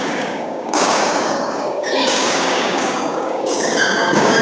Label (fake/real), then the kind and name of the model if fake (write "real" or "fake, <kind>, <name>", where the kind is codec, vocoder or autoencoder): fake, codec, DAC